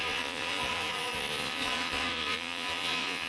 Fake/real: fake